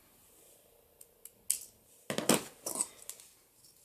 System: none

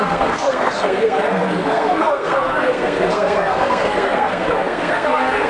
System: codec, SNAC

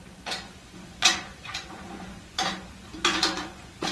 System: vocoder, Vocos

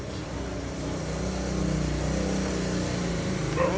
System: none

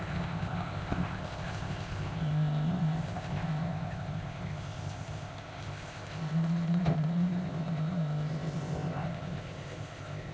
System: codec, ZipCodec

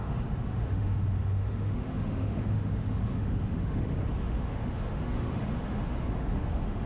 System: autoencoder, DAC-VAE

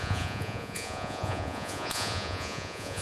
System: vocoder, Vocos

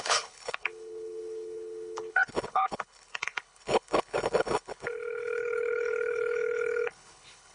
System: codec, HILCodec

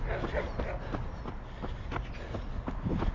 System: none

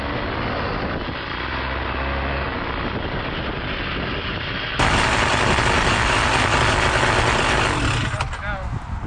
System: none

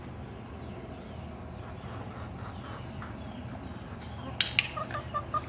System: none